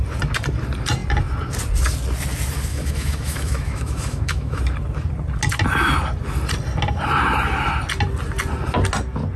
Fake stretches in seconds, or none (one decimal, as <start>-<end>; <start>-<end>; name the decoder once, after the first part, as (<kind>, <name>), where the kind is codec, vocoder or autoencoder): 2.7-4.6 (autoencoder, DAC-VAE)